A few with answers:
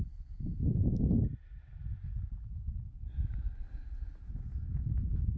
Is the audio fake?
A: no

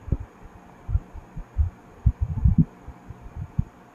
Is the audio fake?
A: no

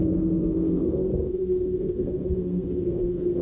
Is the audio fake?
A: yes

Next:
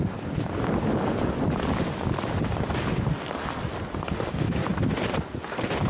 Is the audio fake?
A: no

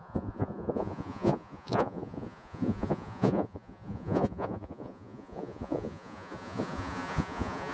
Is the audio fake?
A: yes